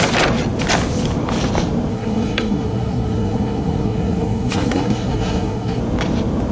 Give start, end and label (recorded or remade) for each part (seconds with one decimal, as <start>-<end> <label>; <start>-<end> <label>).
0.0-1.9 recorded; 1.9-5.8 remade; 5.8-6.5 recorded